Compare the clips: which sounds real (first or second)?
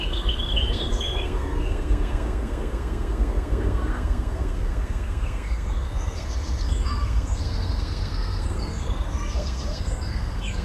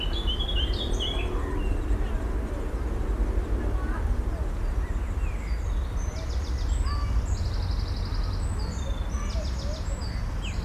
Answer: second